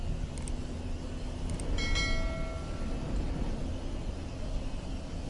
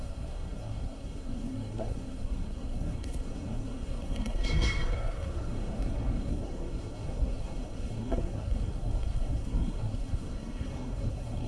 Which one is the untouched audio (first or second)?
first